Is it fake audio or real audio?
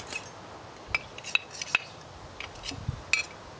real